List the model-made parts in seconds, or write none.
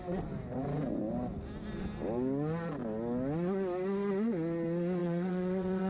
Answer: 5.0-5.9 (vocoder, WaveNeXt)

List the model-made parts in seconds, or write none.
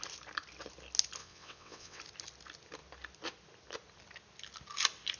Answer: 1.2-2.0 (vocoder, WaveNeXt)